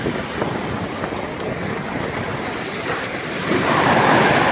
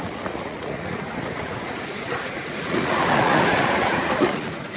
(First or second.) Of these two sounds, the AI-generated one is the second